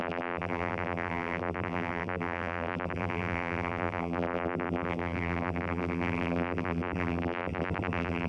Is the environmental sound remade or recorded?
remade